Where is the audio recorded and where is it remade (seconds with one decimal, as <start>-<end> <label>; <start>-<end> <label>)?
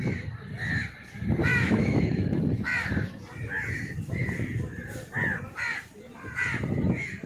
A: 0.0-1.5 recorded; 1.5-2.3 remade; 2.3-7.3 recorded